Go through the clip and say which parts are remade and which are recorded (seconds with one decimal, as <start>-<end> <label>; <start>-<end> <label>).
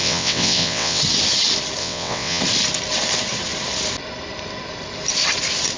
0.0-1.0 remade; 1.0-1.8 recorded; 1.8-2.4 remade; 2.4-5.8 recorded